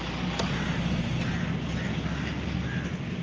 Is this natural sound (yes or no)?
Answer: yes